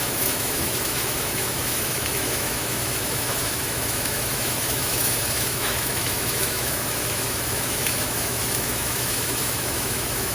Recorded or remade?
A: remade